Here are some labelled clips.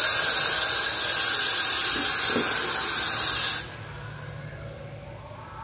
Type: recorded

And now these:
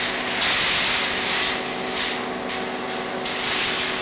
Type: recorded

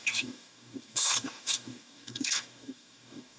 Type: remade